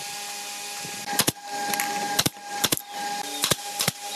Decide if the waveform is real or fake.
real